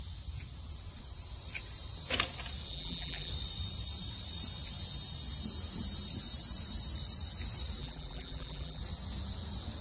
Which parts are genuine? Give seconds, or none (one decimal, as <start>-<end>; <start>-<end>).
0.0-2.7; 3.3-7.8; 8.8-9.8